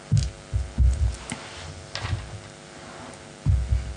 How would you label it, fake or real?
real